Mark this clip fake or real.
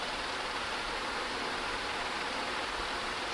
real